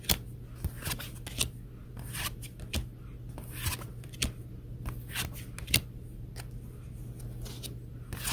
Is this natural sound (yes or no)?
yes